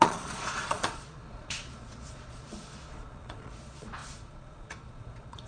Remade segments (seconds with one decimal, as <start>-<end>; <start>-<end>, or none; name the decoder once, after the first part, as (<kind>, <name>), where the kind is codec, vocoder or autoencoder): 0.0-5.5 (vocoder, Vocos)